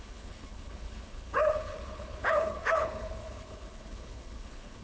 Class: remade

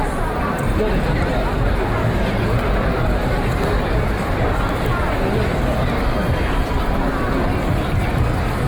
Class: recorded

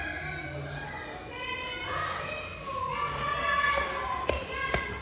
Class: recorded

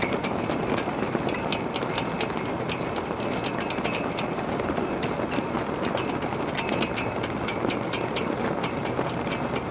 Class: recorded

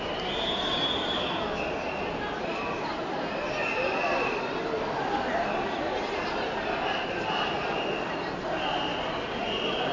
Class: recorded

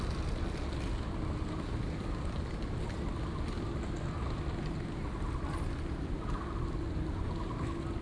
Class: recorded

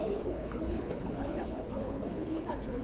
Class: remade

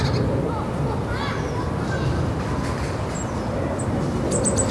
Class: recorded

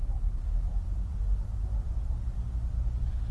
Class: recorded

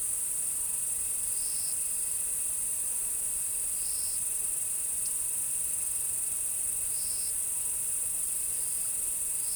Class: remade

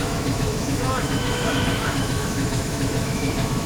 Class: remade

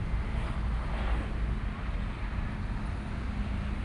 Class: recorded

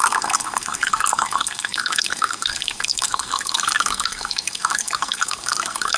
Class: remade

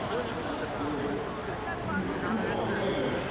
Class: recorded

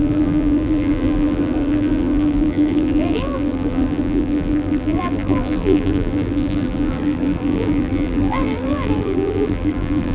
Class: remade